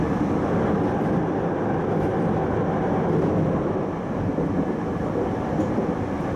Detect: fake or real real